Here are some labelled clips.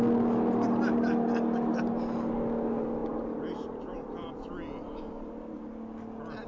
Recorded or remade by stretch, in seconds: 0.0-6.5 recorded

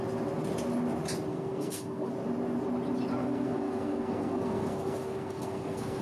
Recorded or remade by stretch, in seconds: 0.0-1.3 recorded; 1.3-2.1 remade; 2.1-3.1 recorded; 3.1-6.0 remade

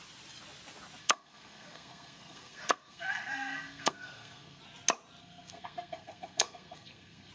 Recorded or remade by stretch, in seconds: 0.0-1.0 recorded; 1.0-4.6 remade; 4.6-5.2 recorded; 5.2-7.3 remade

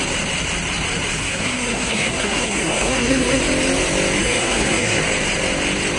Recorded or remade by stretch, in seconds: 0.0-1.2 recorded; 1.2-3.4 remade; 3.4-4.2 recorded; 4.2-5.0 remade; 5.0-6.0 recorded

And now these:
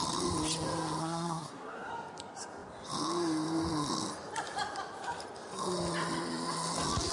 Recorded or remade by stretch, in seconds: 0.0-1.0 recorded; 1.0-1.9 remade; 1.9-7.1 recorded